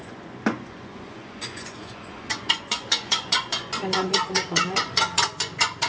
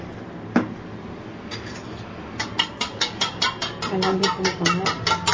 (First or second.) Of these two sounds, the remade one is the first